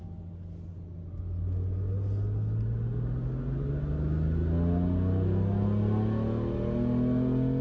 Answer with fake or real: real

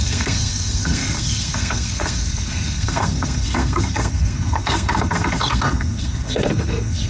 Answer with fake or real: fake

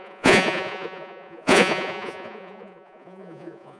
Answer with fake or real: fake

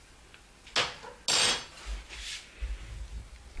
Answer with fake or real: real